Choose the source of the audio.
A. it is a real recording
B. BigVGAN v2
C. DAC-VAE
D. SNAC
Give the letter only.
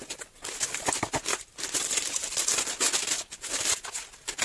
A